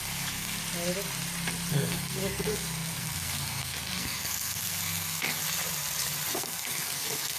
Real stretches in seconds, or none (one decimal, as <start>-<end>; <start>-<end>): 0.6-1.7; 5.4-6.3